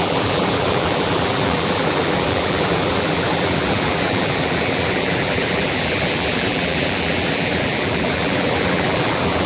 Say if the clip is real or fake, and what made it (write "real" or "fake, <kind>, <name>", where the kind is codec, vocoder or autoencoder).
fake, vocoder, BigVGAN v2